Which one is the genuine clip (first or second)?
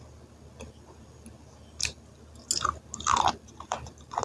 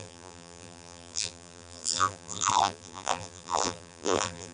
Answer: first